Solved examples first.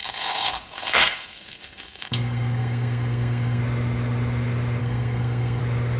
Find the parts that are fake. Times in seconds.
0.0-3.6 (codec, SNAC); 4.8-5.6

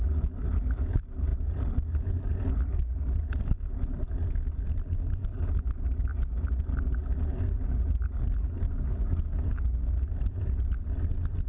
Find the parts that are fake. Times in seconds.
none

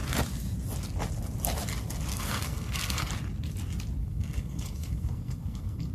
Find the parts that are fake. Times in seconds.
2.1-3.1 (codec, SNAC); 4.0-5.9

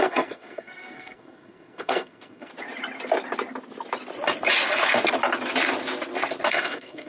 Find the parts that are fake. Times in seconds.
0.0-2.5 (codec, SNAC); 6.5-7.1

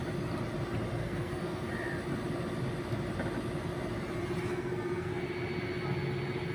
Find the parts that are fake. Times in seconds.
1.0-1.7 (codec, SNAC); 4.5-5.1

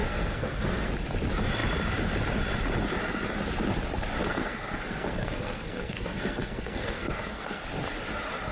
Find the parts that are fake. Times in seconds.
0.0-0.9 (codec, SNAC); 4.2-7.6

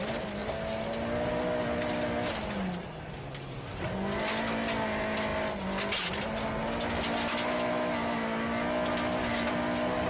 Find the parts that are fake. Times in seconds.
none